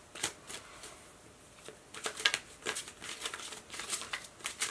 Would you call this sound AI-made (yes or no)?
no